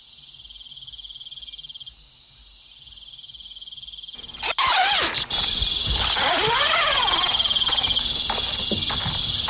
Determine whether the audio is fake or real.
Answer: real